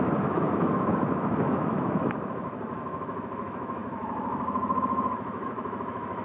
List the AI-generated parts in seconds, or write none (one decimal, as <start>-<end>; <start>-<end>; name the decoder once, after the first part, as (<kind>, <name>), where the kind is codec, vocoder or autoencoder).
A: 0.0-6.2 (autoencoder, DAC-VAE)